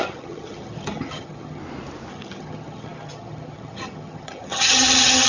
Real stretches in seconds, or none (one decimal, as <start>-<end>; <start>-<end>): 1.6-2.1